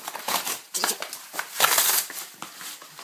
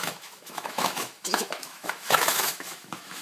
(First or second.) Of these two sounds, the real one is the first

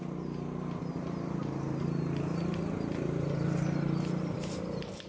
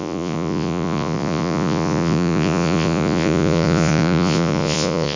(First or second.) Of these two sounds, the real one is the first